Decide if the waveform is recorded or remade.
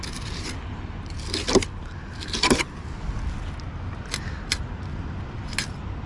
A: recorded